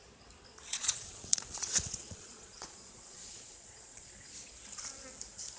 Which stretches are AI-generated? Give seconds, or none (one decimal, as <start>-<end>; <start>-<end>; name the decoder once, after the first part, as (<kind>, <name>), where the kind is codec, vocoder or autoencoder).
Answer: 0.7-4.1 (vocoder, Vocos)